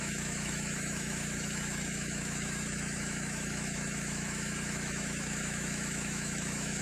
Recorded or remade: remade